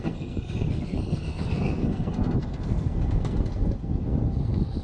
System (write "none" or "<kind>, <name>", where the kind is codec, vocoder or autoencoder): codec, SNAC